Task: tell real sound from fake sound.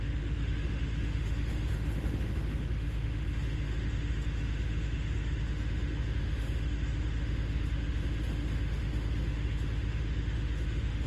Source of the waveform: fake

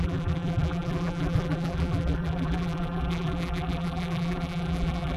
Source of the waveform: fake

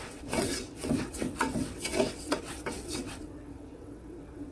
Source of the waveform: fake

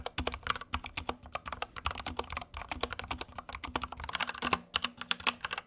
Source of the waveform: real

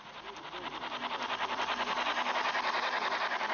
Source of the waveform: real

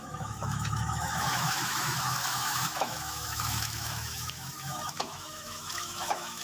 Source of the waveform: fake